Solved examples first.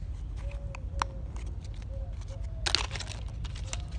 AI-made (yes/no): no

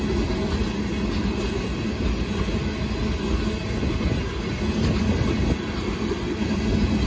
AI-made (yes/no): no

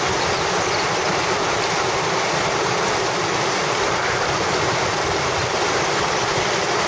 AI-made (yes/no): yes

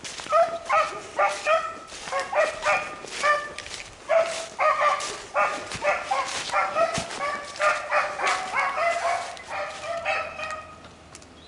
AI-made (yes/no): no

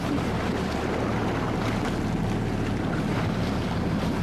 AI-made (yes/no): no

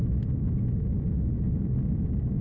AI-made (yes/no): no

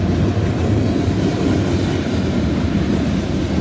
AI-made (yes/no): no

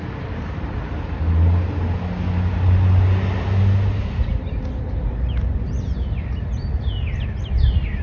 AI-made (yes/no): no